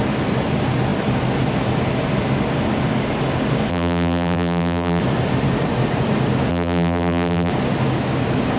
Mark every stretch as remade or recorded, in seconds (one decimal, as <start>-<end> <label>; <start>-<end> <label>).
0.0-3.7 recorded; 3.7-5.0 remade; 5.0-6.5 recorded; 6.5-7.5 remade; 7.5-8.6 recorded